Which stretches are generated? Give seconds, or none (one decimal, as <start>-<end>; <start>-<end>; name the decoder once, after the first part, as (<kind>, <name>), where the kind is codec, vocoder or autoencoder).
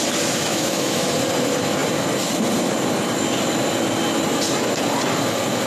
0.5-1.1 (autoencoder, DAC-VAE)